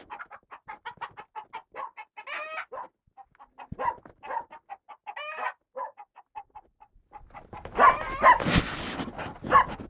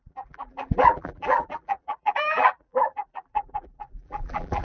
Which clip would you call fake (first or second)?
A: second